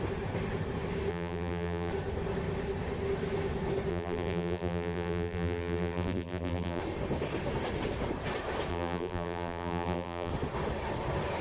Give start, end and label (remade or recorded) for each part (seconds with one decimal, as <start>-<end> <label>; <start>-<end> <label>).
0.0-1.1 recorded; 1.1-1.9 remade; 1.9-3.9 recorded; 3.9-6.8 remade; 6.8-8.7 recorded; 8.7-10.3 remade; 10.3-11.4 recorded